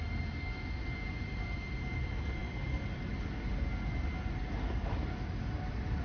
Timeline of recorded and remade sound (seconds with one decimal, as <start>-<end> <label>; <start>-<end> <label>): 0.0-6.0 recorded